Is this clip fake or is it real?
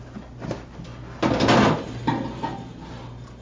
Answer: real